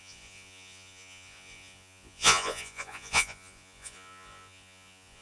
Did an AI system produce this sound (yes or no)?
yes